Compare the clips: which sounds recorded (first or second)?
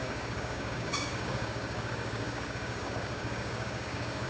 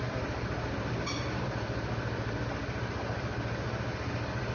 second